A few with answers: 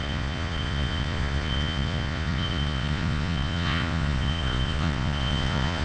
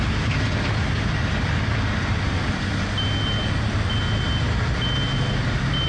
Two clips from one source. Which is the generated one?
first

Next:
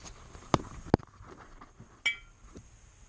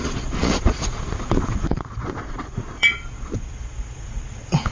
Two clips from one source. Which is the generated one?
second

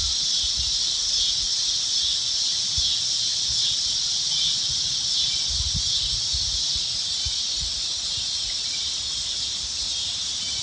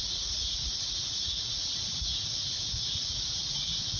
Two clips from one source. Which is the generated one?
second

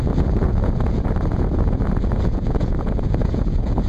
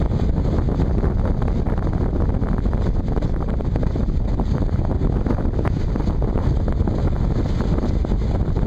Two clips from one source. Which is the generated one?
first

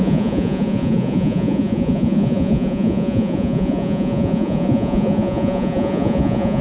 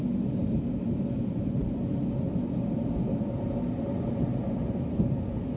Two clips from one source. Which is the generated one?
first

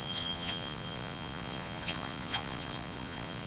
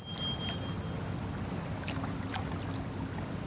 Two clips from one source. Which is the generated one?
first